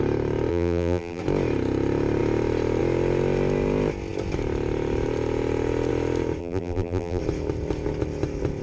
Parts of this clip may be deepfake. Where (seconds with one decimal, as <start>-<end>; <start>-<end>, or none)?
0.5-1.2; 6.4-7.2